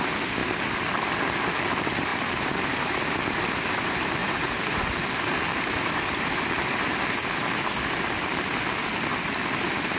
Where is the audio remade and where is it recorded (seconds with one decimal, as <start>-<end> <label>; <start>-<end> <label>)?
0.0-0.4 remade; 0.4-1.7 recorded; 1.7-6.9 remade; 6.9-10.0 recorded